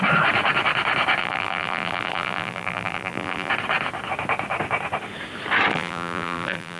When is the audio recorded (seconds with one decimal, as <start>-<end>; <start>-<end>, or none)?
0.0-1.2; 3.5-5.7